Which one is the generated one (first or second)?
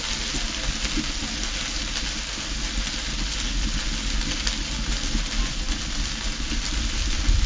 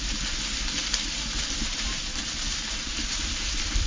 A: second